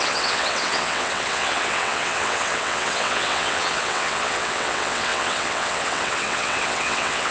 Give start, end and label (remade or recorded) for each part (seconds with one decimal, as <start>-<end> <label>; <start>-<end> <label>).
0.0-7.3 remade